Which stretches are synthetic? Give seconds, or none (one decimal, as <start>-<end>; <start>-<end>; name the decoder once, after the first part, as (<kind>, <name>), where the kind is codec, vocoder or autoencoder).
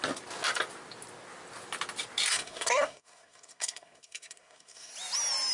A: 2.3-4.9 (codec, SNAC)